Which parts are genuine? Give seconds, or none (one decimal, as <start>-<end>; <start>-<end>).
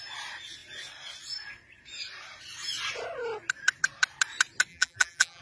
0.0-4.7